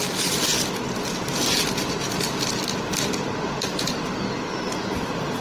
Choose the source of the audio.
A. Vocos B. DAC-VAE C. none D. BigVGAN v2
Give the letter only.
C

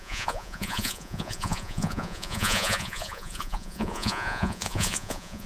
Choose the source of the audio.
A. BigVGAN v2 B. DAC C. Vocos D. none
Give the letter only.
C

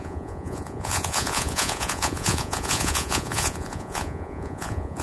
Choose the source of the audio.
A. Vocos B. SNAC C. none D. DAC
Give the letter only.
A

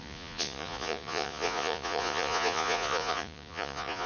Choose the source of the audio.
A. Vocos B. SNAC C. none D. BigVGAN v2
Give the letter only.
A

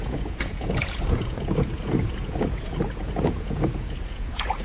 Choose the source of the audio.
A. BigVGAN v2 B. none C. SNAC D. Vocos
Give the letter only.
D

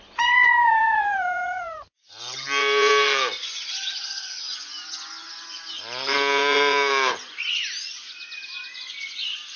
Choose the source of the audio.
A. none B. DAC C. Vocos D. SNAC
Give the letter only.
C